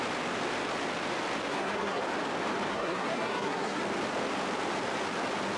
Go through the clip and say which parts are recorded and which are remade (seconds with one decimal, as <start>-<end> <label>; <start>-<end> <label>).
0.0-1.5 recorded; 1.5-2.0 remade; 2.0-2.7 recorded; 2.7-3.8 remade; 3.8-5.6 recorded

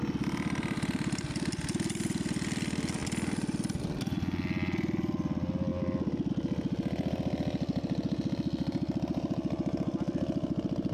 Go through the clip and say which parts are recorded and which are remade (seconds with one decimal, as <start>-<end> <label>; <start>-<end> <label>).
0.0-10.9 recorded